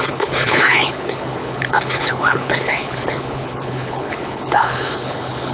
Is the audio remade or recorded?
remade